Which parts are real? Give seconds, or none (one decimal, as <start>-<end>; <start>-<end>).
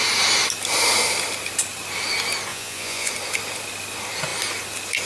0.0-2.5; 3.1-5.1